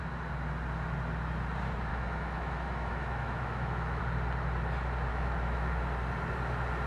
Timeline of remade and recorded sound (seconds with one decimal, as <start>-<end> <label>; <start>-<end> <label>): 0.0-1.9 recorded; 1.9-4.0 remade; 4.0-5.1 recorded; 5.1-5.7 remade; 5.7-6.9 recorded